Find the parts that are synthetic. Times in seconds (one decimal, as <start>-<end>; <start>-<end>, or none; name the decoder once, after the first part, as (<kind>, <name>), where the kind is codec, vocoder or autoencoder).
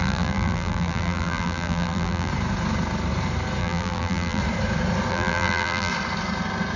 0.0-2.3 (vocoder, BigVGAN v2); 3.6-4.4; 5.1-5.9